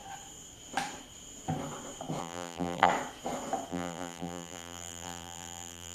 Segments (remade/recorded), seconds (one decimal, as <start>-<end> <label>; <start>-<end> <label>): 0.0-2.2 recorded; 2.2-2.9 remade; 2.9-3.7 recorded; 3.7-5.9 remade